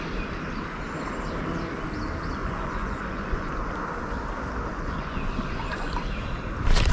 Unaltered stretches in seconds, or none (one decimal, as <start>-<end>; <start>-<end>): 0.0-2.4; 3.5-4.7; 5.9-6.9